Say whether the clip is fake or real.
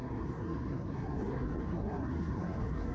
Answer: fake